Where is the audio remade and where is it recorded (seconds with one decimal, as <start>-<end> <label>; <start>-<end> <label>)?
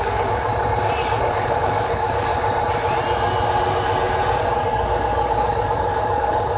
0.0-0.5 remade; 0.5-1.3 recorded; 1.3-2.3 remade; 2.3-4.4 recorded; 4.4-6.6 remade